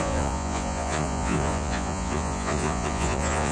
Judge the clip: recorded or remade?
remade